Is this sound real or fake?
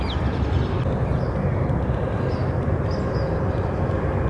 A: real